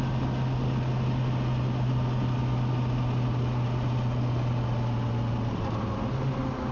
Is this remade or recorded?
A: recorded